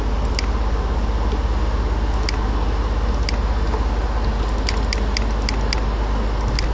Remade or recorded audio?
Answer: recorded